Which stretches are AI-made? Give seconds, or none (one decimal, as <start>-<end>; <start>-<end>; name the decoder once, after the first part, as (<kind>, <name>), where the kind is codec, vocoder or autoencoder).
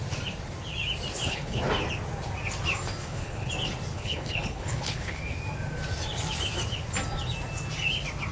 1.1-1.6 (codec, HILCodec); 3.0-3.5; 3.9-5.2